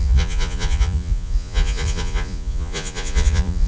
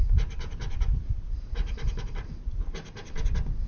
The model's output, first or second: first